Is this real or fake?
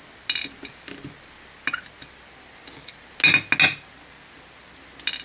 real